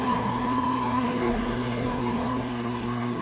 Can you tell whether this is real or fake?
fake